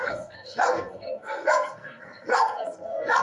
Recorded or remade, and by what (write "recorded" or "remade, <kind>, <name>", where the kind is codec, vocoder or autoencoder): remade, codec, SNAC